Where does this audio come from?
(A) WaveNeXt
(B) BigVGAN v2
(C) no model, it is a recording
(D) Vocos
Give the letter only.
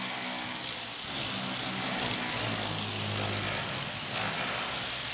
C